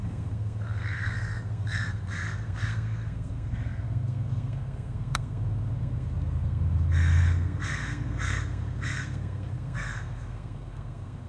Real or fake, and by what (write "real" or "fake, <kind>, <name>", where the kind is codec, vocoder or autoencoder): fake, codec, SNAC